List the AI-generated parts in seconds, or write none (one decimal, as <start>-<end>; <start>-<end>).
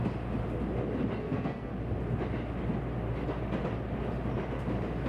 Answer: 1.2-1.7